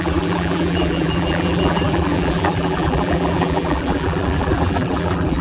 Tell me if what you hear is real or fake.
fake